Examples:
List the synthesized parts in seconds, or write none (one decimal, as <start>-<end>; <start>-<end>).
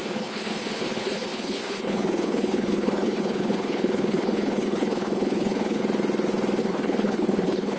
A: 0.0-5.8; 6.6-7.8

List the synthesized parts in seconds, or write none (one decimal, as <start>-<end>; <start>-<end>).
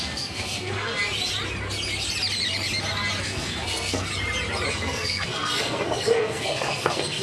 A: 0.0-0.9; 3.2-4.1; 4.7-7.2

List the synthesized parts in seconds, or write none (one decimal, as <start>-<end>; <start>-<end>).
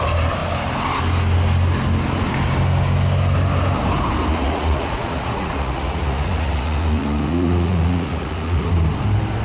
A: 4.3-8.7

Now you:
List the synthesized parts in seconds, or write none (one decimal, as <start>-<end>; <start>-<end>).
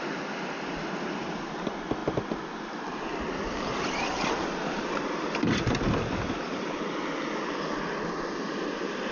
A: none